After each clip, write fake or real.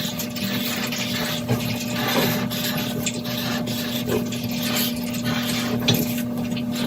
real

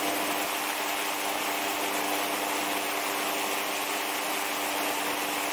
real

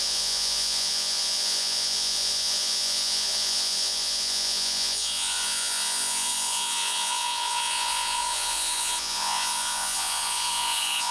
fake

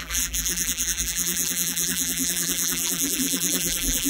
fake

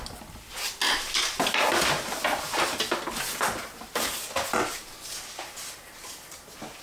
real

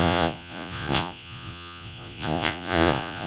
fake